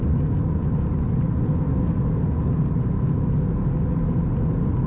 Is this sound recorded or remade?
recorded